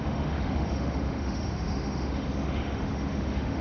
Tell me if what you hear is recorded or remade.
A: remade